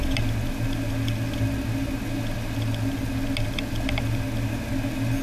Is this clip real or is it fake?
real